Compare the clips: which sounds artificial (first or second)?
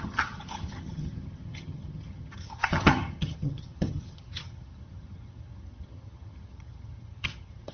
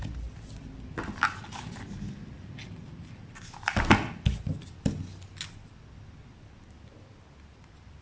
first